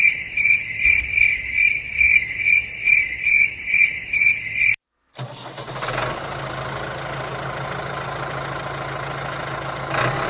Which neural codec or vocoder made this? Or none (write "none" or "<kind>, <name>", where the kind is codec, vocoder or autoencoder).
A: none